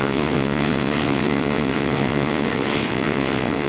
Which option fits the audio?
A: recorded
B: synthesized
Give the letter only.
B